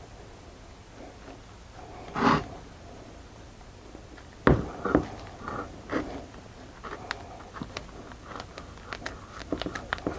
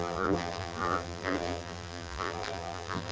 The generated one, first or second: second